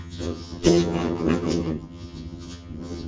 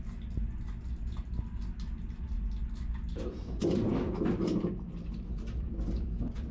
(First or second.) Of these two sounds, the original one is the second